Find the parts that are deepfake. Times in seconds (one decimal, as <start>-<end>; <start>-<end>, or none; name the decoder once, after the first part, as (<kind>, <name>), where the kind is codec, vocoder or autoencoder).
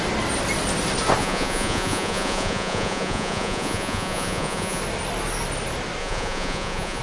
1.2-4.8 (vocoder, Vocos); 6.0-7.0